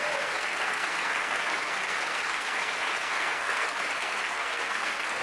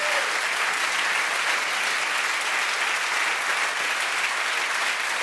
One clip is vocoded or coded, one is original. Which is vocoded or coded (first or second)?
first